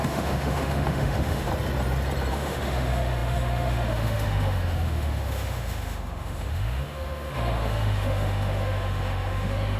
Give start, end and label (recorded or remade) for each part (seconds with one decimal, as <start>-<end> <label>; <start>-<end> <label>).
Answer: 0.0-1.5 remade; 1.5-2.3 recorded; 2.3-9.8 remade